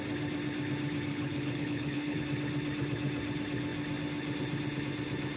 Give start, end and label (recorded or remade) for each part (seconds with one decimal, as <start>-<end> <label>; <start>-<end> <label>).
0.0-1.1 recorded; 1.1-2.2 remade; 2.2-5.4 recorded